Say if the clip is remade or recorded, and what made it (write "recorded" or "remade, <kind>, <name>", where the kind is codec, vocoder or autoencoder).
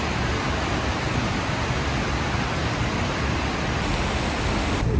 recorded